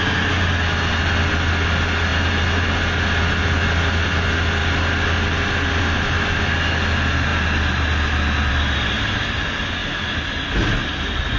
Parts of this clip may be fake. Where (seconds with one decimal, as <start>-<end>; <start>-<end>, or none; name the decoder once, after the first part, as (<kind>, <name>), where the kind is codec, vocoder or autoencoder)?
none